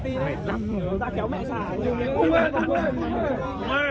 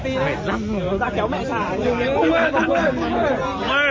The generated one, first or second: first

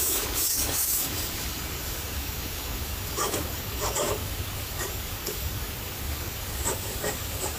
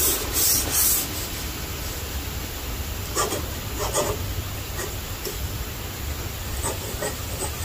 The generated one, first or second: first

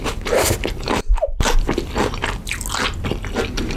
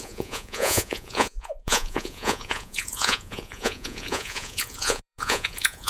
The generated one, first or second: second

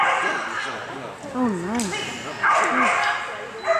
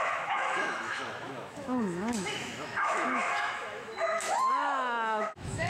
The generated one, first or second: second